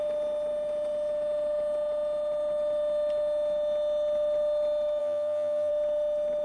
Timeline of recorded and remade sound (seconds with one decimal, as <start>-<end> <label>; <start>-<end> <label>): 0.0-5.0 recorded; 5.0-5.7 remade; 5.7-6.4 recorded

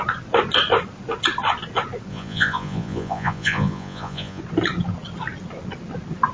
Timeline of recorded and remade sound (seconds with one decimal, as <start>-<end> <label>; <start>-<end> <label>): 0.0-2.1 recorded; 2.1-4.4 remade; 4.4-6.3 recorded

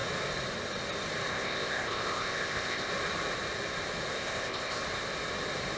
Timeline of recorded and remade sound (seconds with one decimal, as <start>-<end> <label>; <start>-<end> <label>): 0.0-1.3 recorded; 1.3-2.9 remade; 2.9-4.1 recorded; 4.1-4.8 remade; 4.8-5.8 recorded

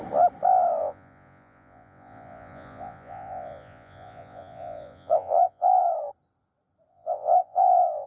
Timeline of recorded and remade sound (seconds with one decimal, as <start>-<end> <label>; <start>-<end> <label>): 0.0-0.8 recorded; 0.8-5.7 remade; 5.7-6.9 recorded; 6.9-8.1 remade

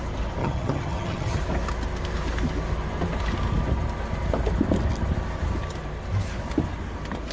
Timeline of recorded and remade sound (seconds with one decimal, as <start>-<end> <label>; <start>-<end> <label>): 0.0-0.4 recorded; 0.4-1.4 remade; 1.4-7.3 recorded

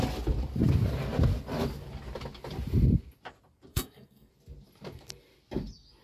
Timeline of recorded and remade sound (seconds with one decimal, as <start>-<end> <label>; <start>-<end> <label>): 0.0-3.7 recorded; 3.7-4.3 remade; 4.3-6.0 recorded

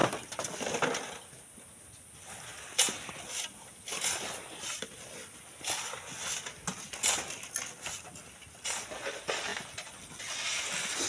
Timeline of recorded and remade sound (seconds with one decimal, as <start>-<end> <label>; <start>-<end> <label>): 0.0-11.1 recorded

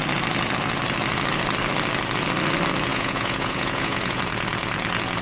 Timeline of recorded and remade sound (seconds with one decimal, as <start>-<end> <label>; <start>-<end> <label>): 0.0-2.9 recorded; 2.9-4.2 remade; 4.2-5.2 recorded